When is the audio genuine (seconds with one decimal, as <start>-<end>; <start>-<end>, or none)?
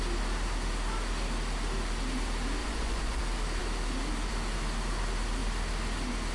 0.0-2.6; 3.2-6.3